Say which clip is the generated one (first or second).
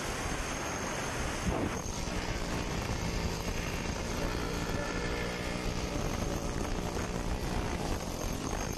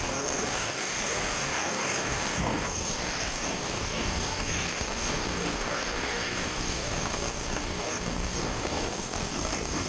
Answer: second